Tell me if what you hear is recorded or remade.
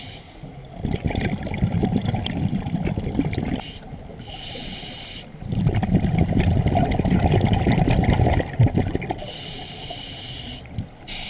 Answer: recorded